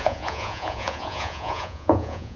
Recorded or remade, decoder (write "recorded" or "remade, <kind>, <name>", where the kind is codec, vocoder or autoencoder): remade, vocoder, Vocos